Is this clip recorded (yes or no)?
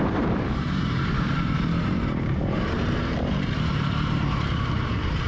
no